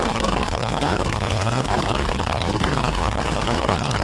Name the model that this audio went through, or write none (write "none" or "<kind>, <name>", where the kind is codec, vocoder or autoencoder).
codec, SNAC